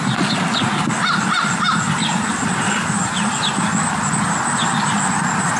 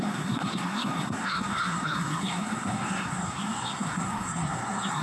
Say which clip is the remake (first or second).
second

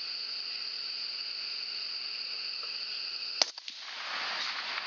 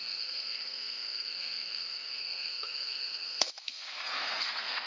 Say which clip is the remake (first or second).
second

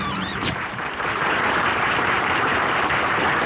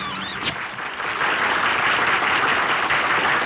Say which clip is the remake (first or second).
first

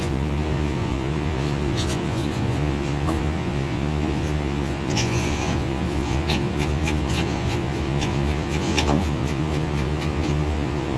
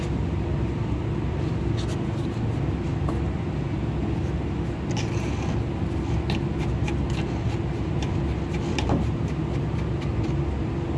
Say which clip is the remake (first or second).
first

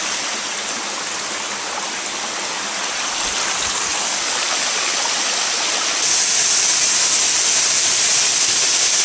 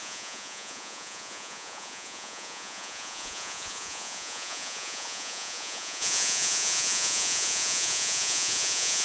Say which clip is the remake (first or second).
second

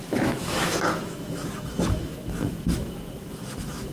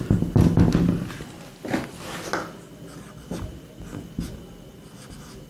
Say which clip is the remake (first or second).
first